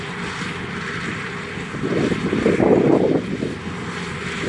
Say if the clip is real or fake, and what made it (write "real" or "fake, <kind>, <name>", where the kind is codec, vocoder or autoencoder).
real